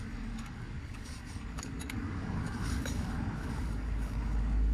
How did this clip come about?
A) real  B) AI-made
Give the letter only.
B